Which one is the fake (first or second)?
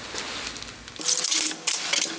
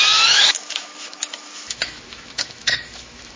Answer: second